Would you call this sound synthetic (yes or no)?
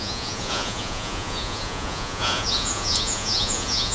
yes